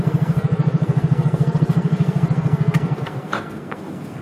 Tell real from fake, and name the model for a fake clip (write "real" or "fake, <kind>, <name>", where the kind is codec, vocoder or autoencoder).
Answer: fake, codec, SNAC